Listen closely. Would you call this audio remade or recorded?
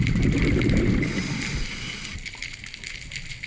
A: recorded